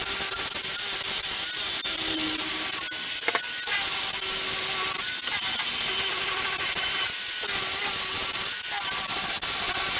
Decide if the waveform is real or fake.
real